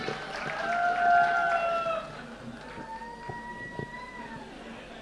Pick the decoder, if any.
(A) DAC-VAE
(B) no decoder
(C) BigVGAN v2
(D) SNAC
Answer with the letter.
B